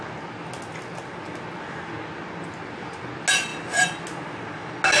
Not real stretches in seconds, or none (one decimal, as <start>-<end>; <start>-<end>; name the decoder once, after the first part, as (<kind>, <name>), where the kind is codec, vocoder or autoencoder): none